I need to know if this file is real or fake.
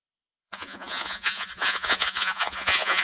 fake